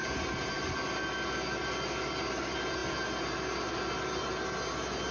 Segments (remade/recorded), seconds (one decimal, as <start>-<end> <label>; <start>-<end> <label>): 0.0-5.1 recorded